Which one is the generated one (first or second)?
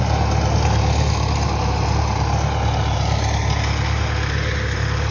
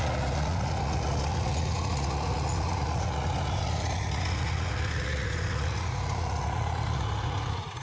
second